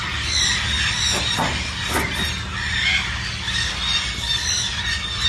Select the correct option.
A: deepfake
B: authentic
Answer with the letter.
B